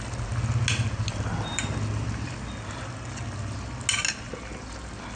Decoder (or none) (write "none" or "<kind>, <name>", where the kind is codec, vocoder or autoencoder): none